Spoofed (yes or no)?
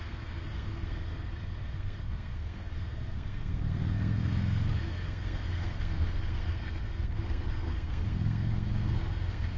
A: yes